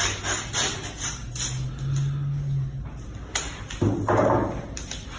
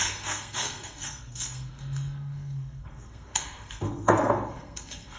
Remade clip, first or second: second